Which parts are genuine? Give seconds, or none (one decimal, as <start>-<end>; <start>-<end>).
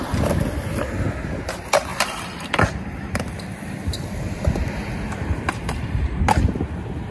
0.0-1.9; 6.2-7.1